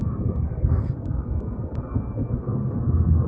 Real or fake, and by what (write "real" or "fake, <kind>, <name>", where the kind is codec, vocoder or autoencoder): fake, codec, SNAC